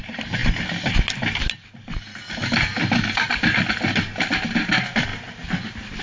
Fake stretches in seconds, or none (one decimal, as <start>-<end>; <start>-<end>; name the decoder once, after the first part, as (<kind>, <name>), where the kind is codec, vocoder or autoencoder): none